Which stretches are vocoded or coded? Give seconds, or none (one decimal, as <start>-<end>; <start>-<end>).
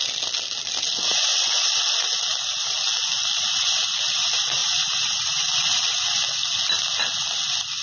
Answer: 4.6-5.4